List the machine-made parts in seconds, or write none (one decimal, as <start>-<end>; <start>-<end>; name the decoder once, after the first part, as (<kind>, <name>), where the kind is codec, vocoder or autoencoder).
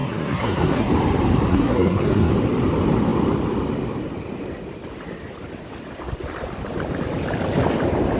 0.0-0.9 (codec, SNAC); 1.5-2.3